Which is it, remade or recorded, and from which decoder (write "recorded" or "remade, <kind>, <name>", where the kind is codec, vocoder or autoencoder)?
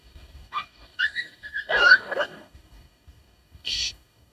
remade, codec, DAC